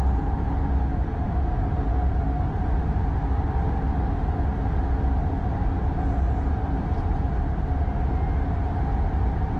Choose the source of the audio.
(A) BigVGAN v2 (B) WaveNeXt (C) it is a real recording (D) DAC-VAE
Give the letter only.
C